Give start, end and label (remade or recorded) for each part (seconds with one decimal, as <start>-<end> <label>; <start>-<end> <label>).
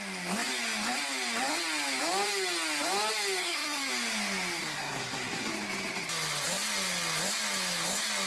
0.0-3.4 recorded; 3.4-3.9 remade; 3.9-4.6 recorded; 4.6-5.5 remade; 5.5-8.3 recorded